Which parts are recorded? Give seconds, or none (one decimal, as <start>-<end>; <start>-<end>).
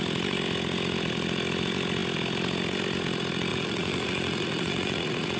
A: 0.0-3.5